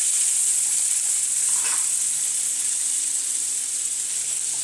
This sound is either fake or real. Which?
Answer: fake